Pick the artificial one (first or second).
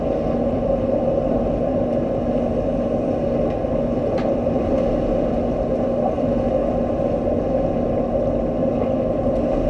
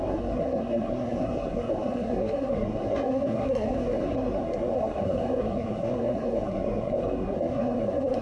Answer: second